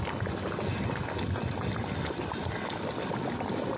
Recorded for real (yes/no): yes